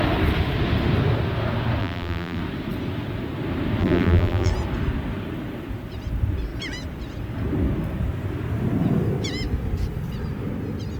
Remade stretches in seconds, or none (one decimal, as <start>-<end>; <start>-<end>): 1.8-2.4; 3.8-4.5